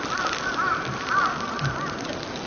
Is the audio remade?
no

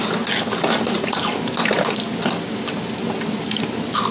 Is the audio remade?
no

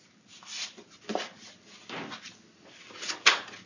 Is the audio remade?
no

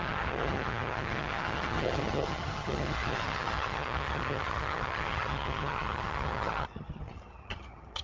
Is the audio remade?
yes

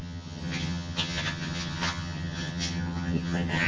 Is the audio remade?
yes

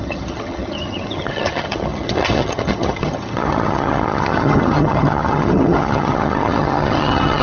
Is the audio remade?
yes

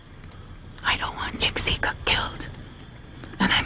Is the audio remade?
no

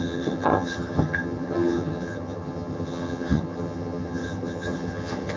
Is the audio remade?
yes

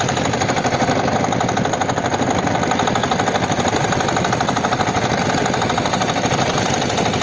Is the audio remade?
no